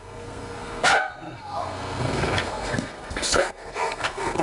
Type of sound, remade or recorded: remade